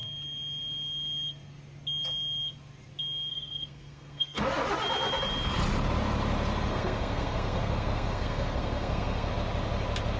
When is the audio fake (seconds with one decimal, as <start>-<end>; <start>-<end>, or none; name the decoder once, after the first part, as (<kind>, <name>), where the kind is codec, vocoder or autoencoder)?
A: 3.3-4.4 (codec, SNAC); 6.7-9.3

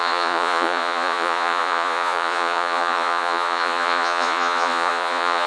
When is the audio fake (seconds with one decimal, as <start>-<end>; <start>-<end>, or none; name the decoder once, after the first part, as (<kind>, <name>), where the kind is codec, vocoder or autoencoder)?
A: 0.0-5.5 (vocoder, Vocos)

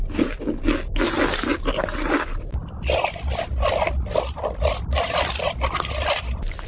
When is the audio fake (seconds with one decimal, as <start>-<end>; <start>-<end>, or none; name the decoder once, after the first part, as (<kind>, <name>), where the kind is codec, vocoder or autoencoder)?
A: none

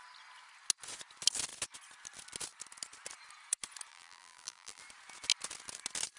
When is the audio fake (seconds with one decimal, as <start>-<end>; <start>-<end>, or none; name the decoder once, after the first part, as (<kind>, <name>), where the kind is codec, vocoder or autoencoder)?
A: 3.9-4.8 (vocoder, BigVGAN v2)

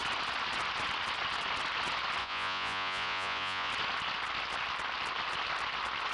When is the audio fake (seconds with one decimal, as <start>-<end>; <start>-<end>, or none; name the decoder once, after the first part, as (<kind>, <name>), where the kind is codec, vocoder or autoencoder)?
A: 2.2-3.7 (vocoder, Vocos)

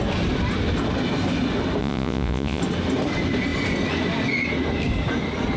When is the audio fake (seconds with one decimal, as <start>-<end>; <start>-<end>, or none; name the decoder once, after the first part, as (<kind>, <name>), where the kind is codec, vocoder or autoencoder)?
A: 1.8-2.6 (vocoder, Vocos)

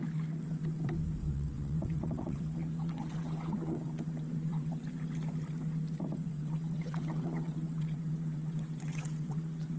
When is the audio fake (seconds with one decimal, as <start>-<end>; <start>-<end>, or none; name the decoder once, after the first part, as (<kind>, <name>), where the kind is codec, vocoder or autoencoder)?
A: 1.2-4.8 (vocoder, WaveNeXt); 6.3-9.8

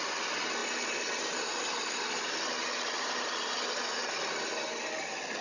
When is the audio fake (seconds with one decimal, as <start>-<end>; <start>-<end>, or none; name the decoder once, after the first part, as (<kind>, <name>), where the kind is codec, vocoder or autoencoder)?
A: none